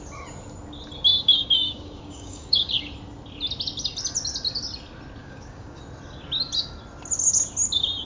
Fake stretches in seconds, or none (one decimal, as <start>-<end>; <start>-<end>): 1.1-2.7; 5.2-5.8